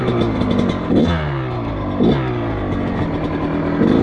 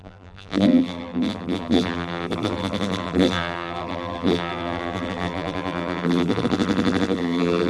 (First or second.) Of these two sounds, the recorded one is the first